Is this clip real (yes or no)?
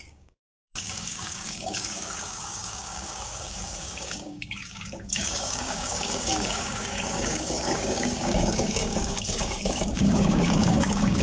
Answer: no